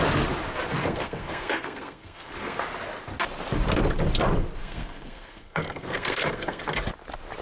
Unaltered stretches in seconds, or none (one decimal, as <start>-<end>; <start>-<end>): 0.0-0.8; 2.6-4.6; 6.6-7.4